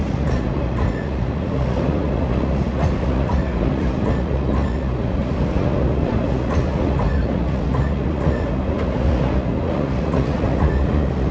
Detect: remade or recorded remade